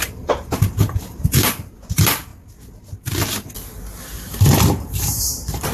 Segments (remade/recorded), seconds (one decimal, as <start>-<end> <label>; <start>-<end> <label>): 0.0-2.3 remade; 2.3-4.6 recorded; 4.6-5.7 remade